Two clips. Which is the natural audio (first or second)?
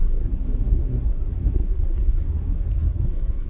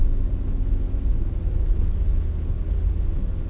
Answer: second